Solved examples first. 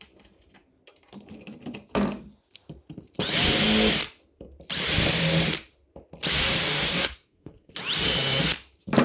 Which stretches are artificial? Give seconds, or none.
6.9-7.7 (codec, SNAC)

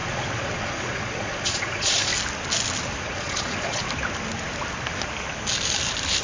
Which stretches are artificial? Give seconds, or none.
0.0-2.1 (vocoder, Vocos); 3.0-3.8